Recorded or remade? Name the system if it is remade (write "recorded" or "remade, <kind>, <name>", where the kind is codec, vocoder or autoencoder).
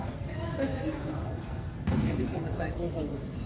remade, codec, SNAC